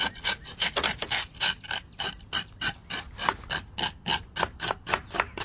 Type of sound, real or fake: real